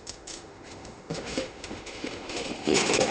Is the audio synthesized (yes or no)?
yes